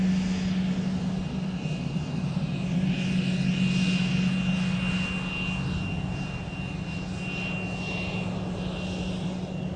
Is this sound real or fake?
real